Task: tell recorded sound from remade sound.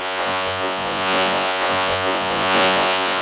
remade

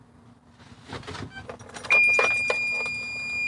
recorded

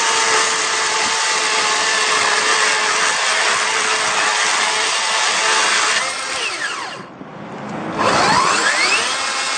recorded